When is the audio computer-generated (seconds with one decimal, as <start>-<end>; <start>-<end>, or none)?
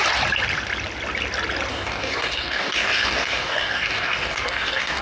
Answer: 1.7-5.0